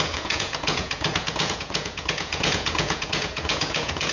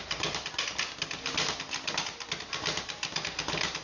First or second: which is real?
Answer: second